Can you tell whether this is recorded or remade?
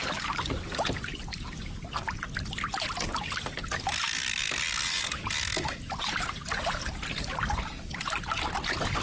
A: recorded